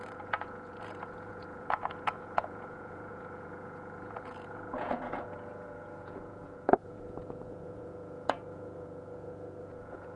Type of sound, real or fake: fake